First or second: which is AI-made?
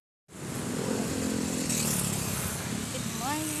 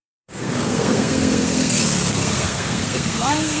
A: second